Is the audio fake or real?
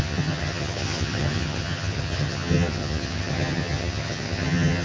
fake